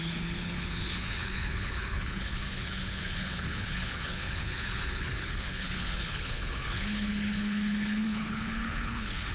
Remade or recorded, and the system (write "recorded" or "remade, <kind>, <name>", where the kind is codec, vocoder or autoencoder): remade, codec, HILCodec